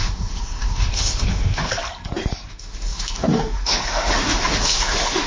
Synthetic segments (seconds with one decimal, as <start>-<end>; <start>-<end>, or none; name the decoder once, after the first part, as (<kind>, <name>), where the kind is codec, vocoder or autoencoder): 0.0-1.7 (autoencoder, DAC-VAE); 2.5-5.3